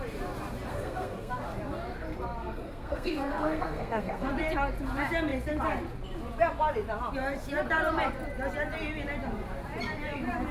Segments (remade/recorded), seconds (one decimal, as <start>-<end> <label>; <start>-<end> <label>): 0.0-0.7 recorded; 0.7-1.3 remade; 1.3-2.4 recorded; 2.4-4.3 remade; 4.3-10.5 recorded